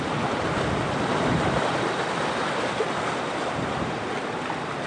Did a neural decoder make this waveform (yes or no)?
yes